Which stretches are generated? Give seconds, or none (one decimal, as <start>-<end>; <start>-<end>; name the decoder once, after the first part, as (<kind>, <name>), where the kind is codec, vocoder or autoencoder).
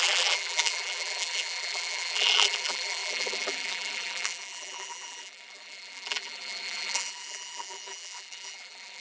0.0-9.0 (vocoder, BigVGAN v2)